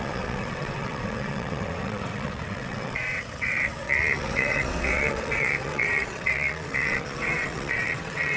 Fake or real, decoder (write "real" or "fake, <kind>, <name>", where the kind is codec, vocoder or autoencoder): fake, vocoder, WaveNeXt